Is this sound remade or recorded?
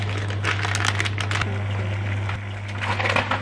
recorded